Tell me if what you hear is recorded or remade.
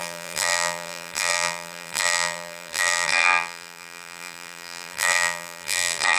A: remade